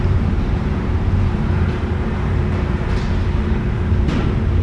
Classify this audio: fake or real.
fake